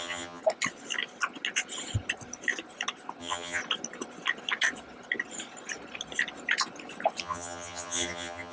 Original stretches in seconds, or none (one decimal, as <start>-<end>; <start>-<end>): 0.4-3.2; 3.6-7.2